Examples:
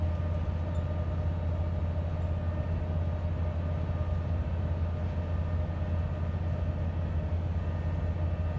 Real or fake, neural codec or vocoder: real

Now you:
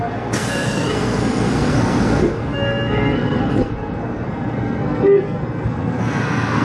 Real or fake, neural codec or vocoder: fake, codec, SNAC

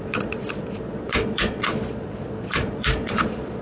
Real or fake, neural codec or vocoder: fake, vocoder, Vocos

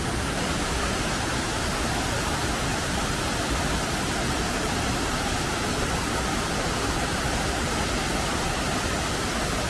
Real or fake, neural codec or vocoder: real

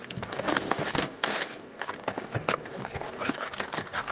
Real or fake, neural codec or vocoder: fake, codec, DAC